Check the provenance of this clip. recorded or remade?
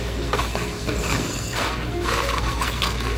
remade